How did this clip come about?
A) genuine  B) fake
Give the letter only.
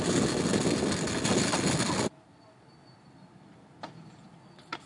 A